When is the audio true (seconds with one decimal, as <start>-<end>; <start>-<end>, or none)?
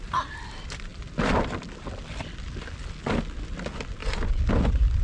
0.0-0.9; 2.9-4.0